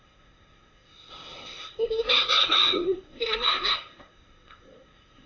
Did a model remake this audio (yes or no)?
yes